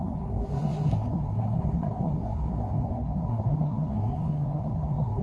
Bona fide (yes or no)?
no